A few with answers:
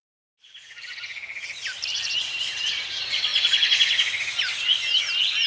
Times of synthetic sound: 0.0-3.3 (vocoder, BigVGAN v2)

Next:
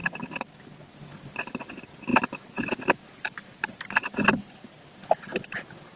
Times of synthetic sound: none

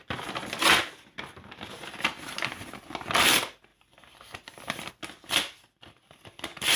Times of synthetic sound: 3.7-4.9 (vocoder, BigVGAN v2)

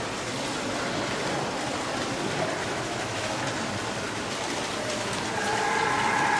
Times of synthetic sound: 2.6-3.4 (autoencoder, DAC-VAE)

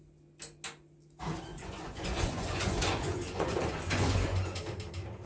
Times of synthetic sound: 1.5-4.6 (vocoder, Vocos)